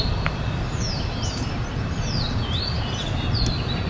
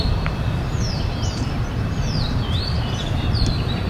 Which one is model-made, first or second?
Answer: second